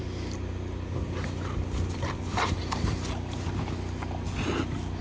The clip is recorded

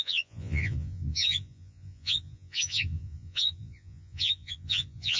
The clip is remade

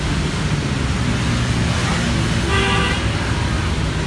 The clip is recorded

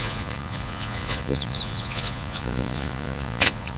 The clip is remade